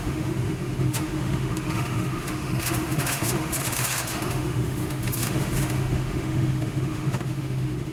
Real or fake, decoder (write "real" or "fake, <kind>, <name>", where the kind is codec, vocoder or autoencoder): fake, autoencoder, DAC-VAE